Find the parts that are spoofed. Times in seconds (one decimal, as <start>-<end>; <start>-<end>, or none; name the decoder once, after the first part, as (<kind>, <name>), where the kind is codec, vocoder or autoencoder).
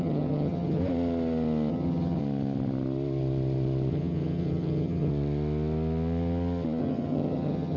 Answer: 0.0-0.8 (vocoder, HiFi-GAN); 1.7-2.2; 3.9-5.1; 6.8-7.8